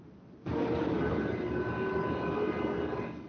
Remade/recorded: recorded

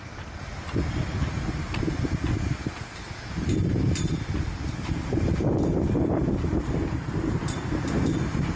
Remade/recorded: remade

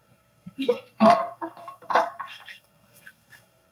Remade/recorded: remade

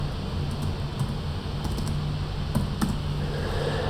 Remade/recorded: recorded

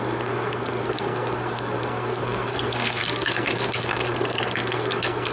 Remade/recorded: remade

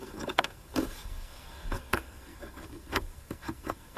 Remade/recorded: remade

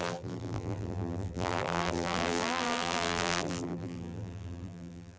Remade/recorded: remade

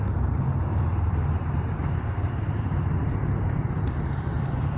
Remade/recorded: remade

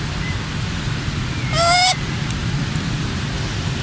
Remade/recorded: recorded